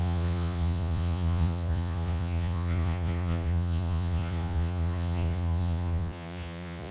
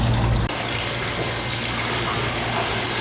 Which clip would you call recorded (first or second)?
second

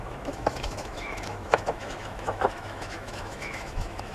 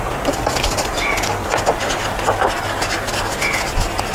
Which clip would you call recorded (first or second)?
second